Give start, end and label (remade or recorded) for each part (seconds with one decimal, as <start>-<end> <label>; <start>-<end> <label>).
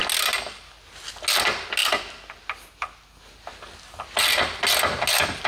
0.0-5.5 recorded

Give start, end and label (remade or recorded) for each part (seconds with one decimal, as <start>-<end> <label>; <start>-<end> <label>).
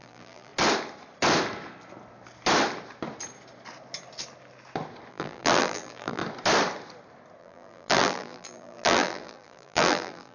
0.0-0.5 remade; 0.5-5.1 recorded; 5.1-6.2 remade; 6.2-7.4 recorded; 7.4-10.3 remade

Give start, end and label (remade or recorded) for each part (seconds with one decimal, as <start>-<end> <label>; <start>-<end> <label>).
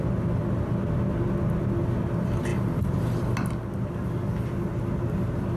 0.0-5.6 recorded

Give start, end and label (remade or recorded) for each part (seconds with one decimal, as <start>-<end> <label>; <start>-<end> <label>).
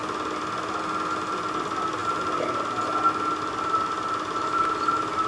0.0-5.3 recorded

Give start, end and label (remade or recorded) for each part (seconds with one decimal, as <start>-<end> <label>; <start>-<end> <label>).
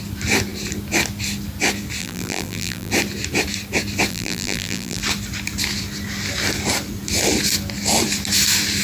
0.0-2.0 recorded; 2.0-2.9 remade; 2.9-4.1 recorded; 4.1-5.0 remade; 5.0-8.8 recorded